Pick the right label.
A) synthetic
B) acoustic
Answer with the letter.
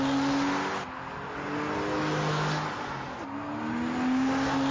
B